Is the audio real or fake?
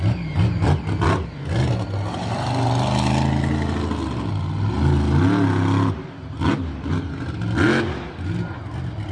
real